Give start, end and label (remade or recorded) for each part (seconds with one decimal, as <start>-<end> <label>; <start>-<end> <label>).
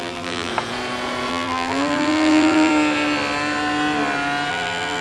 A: 0.0-0.5 remade; 0.5-1.3 recorded; 1.3-2.7 remade; 2.7-4.5 recorded; 4.5-5.0 remade